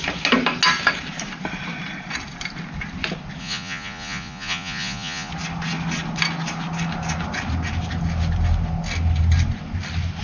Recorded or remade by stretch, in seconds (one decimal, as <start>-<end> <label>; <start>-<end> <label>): 0.0-3.4 recorded; 3.4-5.3 remade; 5.3-10.2 recorded